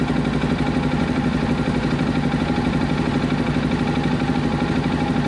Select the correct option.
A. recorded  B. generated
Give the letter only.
A